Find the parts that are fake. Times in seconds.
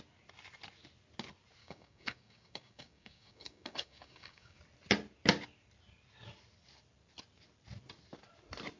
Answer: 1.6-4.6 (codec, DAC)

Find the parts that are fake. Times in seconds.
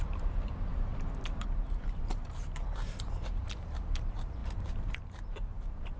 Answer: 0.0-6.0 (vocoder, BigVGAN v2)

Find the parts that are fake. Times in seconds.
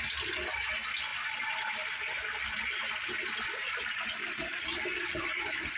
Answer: none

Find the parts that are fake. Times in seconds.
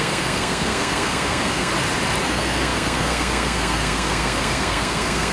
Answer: 0.0-1.7 (codec, SNAC); 2.2-5.3